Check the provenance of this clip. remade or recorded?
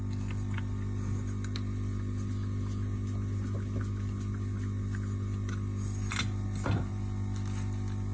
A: recorded